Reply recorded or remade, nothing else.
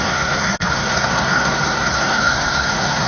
remade